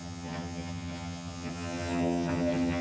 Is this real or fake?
fake